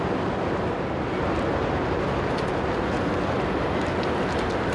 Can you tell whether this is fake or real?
real